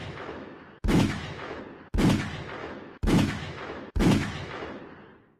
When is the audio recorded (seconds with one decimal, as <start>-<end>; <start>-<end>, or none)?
1.6-2.6; 4.8-5.4